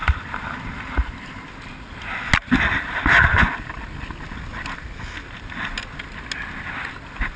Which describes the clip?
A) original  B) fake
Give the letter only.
A